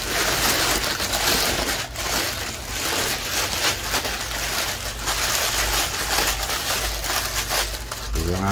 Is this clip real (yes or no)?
yes